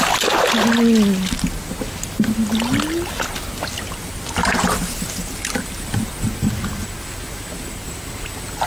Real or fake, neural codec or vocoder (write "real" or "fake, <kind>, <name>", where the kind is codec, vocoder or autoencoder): real